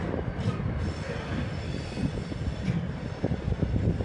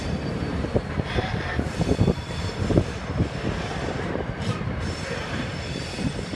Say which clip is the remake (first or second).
second